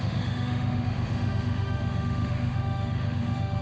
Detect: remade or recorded remade